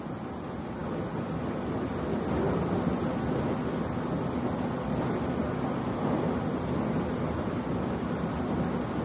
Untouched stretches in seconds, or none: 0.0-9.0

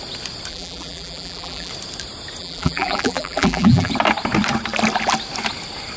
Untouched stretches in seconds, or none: 0.0-0.5; 1.7-2.4; 3.9-6.0

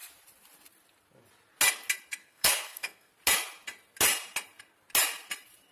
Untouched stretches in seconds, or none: 0.0-2.2; 3.1-5.7